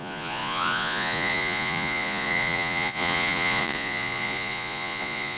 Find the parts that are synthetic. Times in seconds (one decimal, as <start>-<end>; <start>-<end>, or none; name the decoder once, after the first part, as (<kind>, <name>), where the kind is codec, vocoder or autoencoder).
0.0-5.4 (vocoder, Vocos)